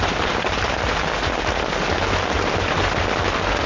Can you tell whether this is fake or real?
real